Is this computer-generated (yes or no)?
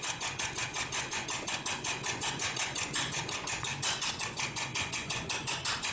yes